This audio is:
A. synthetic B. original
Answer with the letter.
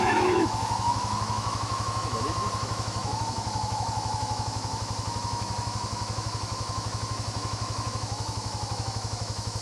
A